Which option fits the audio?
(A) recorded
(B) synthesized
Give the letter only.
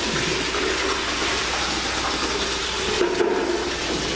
A